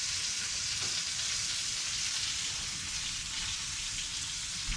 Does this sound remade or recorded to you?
recorded